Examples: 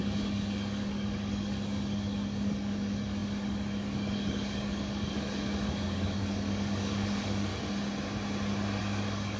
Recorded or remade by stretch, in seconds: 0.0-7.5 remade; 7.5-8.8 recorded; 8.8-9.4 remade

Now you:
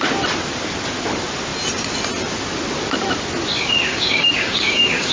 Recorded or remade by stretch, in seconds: 0.0-3.5 recorded; 3.5-5.1 remade

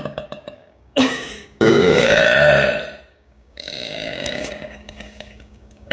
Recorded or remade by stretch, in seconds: 0.0-2.2 remade; 2.2-3.1 recorded; 3.1-5.9 remade

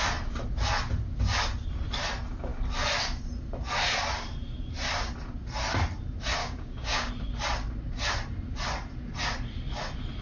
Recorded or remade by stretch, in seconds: 0.0-6.4 recorded; 6.4-7.1 remade; 7.1-10.2 recorded

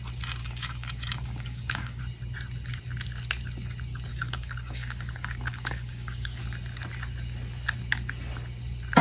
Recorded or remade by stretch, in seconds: 0.0-0.4 recorded; 0.4-2.0 remade; 2.0-4.1 recorded; 4.1-6.4 remade; 6.4-9.0 recorded

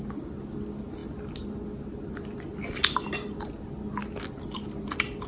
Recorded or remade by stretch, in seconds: 0.0-5.3 recorded

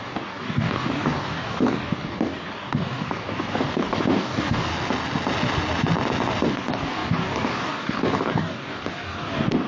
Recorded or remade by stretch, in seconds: 0.0-4.7 remade; 4.7-6.5 recorded; 6.5-9.7 remade

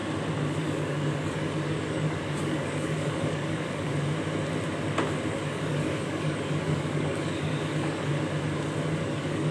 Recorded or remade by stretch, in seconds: 0.0-0.6 recorded; 0.6-3.9 remade; 3.9-5.3 recorded; 5.3-8.1 remade; 8.1-9.0 recorded; 9.0-9.5 remade